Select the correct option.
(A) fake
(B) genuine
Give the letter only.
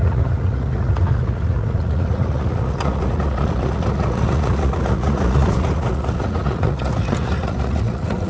A